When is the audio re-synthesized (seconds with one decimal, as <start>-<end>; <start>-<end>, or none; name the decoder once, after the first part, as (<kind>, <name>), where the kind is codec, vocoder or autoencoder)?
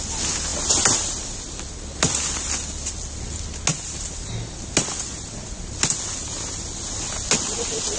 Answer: none